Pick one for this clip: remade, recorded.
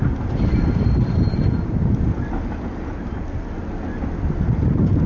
recorded